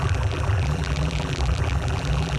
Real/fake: fake